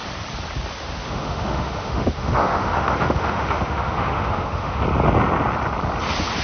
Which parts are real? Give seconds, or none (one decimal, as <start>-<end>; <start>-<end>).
0.0-1.0; 4.8-6.4